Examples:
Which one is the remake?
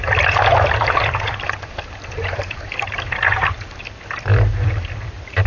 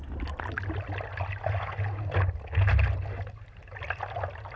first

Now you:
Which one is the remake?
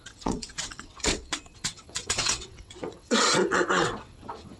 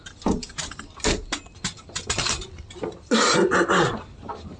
first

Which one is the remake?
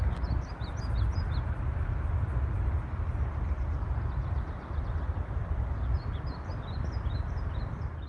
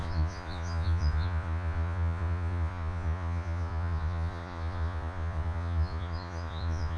second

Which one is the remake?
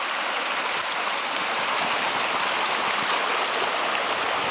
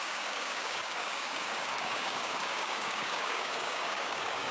second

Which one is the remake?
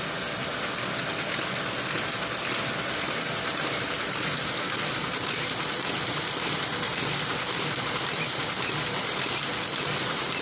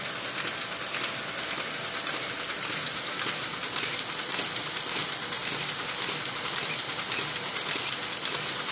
first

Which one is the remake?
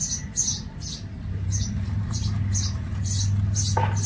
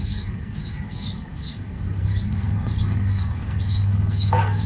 second